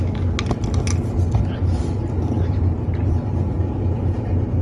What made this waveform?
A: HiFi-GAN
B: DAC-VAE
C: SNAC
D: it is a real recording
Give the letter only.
D